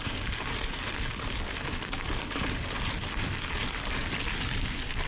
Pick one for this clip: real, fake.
real